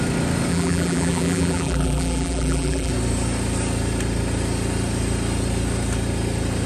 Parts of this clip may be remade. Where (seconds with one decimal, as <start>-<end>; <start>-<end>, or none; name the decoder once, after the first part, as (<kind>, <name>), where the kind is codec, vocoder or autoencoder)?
0.5-2.9 (vocoder, BigVGAN v2)